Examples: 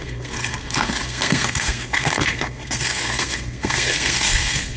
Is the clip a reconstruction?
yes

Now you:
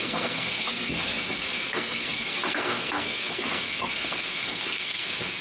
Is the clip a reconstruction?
yes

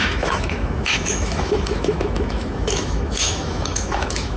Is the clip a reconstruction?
yes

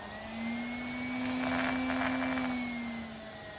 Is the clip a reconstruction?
no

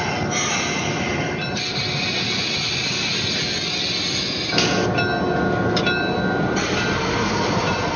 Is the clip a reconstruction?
no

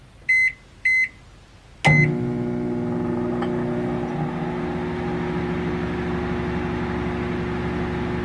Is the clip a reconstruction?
no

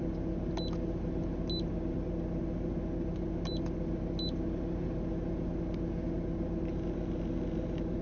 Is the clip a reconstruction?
no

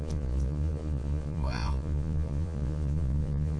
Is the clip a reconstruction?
yes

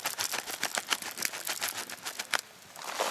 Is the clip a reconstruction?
no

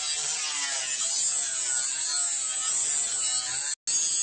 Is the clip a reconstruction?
no